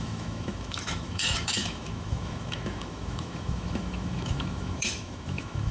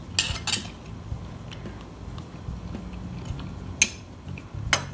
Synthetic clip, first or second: first